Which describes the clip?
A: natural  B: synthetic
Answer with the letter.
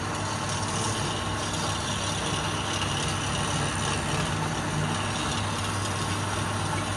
A